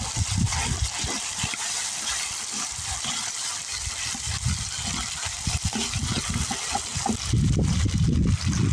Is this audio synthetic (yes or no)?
no